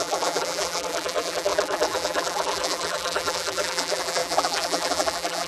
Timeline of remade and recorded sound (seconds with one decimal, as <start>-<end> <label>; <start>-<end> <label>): 0.0-5.5 remade